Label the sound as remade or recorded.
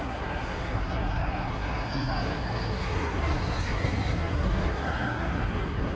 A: remade